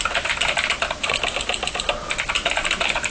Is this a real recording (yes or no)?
yes